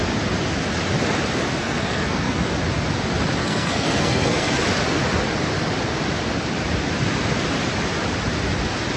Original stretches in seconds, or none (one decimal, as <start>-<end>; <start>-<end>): 0.0-1.6; 2.5-3.4; 4.6-9.0